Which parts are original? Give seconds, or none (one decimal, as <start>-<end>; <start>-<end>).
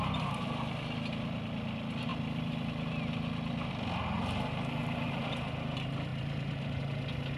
0.0-6.1; 6.8-7.4